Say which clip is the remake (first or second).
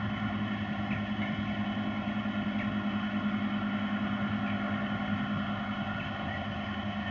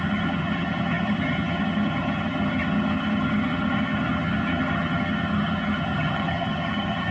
second